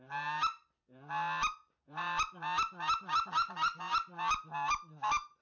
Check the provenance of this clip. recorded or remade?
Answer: recorded